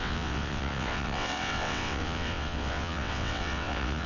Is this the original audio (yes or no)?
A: no